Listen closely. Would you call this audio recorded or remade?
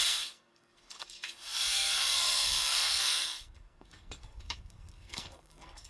remade